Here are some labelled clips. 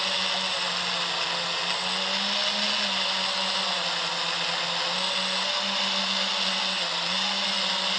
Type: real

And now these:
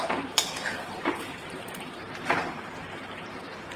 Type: fake